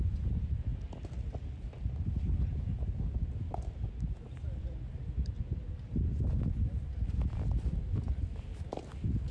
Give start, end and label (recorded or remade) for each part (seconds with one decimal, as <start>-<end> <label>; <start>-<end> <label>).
0.0-9.3 recorded